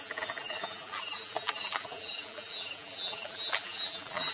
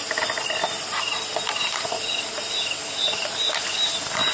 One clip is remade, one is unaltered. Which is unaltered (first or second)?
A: second